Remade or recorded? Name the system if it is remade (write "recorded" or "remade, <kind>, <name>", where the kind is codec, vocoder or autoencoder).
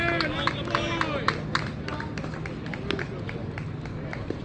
recorded